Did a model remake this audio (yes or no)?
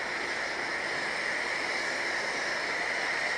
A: no